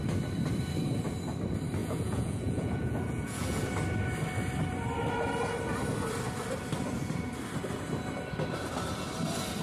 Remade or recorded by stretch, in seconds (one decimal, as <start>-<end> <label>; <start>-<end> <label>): 0.0-1.8 recorded; 1.8-3.6 remade; 3.6-9.6 recorded